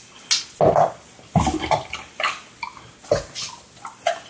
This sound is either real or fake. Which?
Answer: real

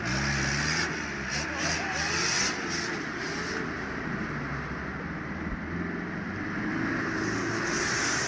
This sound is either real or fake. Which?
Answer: real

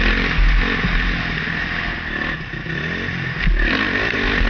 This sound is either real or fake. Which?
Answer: real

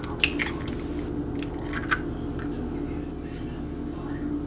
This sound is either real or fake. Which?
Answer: real